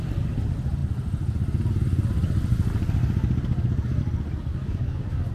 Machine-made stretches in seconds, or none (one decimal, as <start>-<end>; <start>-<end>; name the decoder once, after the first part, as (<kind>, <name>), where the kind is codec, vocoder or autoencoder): 4.5-5.3 (codec, DAC)